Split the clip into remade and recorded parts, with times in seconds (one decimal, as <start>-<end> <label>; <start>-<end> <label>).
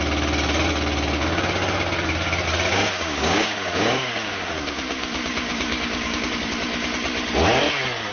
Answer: 0.0-2.7 recorded; 2.7-6.4 remade; 6.4-8.1 recorded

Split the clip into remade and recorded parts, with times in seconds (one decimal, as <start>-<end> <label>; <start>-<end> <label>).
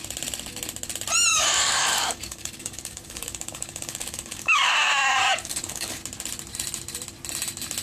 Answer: 0.0-1.3 recorded; 1.3-6.0 remade; 6.0-7.8 recorded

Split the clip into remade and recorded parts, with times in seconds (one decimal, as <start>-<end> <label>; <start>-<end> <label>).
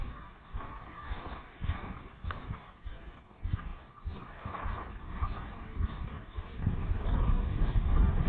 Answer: 0.0-8.3 remade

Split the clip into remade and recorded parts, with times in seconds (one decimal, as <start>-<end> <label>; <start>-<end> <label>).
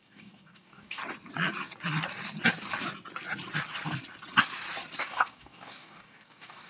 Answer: 0.0-1.0 remade; 1.0-5.0 recorded; 5.0-6.7 remade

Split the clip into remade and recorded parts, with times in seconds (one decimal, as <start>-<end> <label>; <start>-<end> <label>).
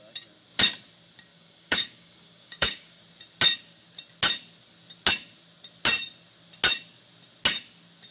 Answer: 0.0-1.3 recorded; 1.3-3.0 remade; 3.0-8.1 recorded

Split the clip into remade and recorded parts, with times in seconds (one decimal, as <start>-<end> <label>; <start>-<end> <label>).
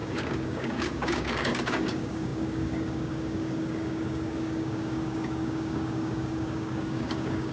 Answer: 0.0-7.5 remade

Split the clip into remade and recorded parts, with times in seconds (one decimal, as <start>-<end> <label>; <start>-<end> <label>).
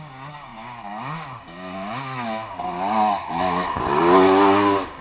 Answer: 0.0-5.0 remade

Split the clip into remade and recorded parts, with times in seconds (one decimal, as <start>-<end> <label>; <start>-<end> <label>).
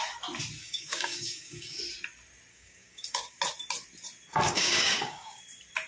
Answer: 0.0-0.6 recorded; 0.6-1.8 remade; 1.8-2.5 recorded; 2.5-3.4 remade; 3.4-4.3 recorded; 4.3-5.4 remade; 5.4-5.9 recorded